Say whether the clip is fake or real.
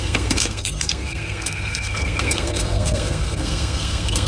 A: fake